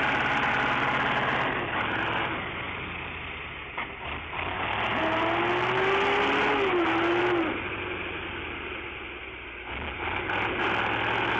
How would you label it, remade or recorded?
recorded